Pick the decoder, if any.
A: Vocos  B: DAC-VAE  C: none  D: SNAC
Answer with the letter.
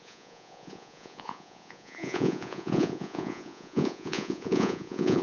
A